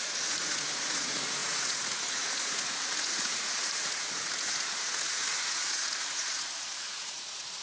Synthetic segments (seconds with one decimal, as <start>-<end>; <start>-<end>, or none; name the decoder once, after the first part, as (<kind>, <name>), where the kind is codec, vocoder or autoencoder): 0.0-7.6 (vocoder, Vocos)

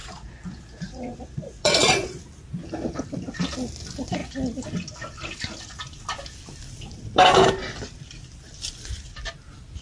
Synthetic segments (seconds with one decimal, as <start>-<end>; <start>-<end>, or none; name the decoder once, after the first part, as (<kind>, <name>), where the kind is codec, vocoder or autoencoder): 0.0-2.2 (vocoder, Vocos)

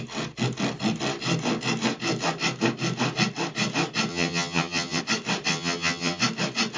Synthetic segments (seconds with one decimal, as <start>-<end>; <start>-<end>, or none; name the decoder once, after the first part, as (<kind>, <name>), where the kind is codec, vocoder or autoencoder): 4.1-5.0 (vocoder, HiFi-GAN); 5.5-6.2

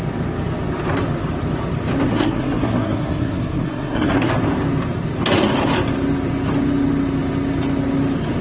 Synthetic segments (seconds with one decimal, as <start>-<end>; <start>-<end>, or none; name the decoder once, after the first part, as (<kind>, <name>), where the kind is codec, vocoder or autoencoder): 2.1-4.3 (codec, SNAC)

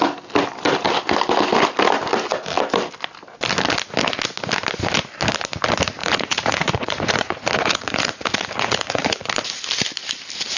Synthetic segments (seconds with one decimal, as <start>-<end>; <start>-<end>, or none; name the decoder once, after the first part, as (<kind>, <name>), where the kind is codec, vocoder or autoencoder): 6.0-9.3 (vocoder, Vocos)